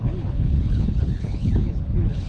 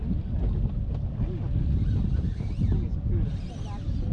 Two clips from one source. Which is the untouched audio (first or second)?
second